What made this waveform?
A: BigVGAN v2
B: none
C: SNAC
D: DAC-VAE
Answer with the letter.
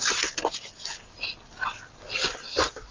B